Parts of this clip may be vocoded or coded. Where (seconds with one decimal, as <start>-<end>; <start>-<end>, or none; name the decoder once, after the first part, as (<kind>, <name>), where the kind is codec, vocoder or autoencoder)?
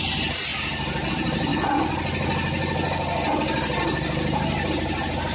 0.0-0.5 (vocoder, BigVGAN v2); 1.1-1.5; 4.7-5.3